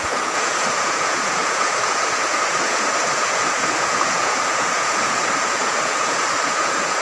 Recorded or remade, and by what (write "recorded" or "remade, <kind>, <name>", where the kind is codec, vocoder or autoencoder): remade, vocoder, Vocos